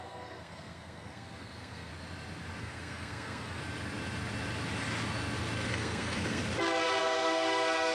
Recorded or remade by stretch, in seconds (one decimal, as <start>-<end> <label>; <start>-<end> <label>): 0.0-1.9 remade; 1.9-2.6 recorded; 2.6-3.6 remade; 3.6-5.7 recorded; 5.7-6.4 remade; 6.4-7.0 recorded; 7.0-7.9 remade

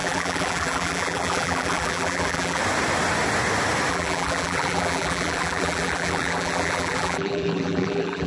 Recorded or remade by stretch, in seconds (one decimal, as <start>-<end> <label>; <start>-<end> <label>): 0.0-2.6 remade; 2.6-3.9 recorded; 3.9-8.3 remade